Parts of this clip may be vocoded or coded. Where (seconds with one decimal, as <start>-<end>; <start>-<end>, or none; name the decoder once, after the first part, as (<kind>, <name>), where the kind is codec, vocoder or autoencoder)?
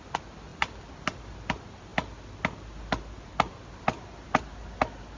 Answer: none